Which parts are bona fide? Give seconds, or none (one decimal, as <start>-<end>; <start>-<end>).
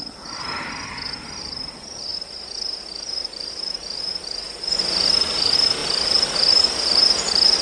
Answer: 0.0-7.6